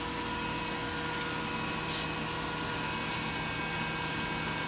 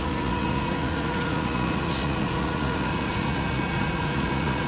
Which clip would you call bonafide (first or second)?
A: first